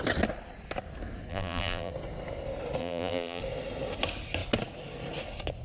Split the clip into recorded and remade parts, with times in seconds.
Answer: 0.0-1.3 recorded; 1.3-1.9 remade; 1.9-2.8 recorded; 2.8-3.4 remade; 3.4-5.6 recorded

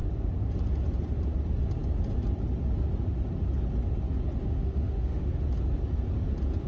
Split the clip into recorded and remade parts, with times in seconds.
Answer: 0.0-4.4 recorded; 4.4-5.4 remade; 5.4-6.7 recorded